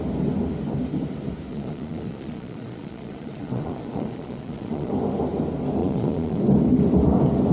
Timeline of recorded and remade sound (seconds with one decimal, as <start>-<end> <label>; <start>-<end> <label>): 0.0-1.5 recorded; 1.5-4.9 remade; 4.9-5.8 recorded; 5.8-6.4 remade; 6.4-7.5 recorded